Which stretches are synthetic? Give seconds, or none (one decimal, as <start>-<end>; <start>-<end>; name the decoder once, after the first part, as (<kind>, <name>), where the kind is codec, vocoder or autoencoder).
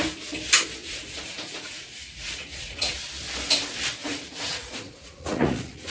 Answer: 0.8-2.9 (vocoder, Vocos); 4.0-5.9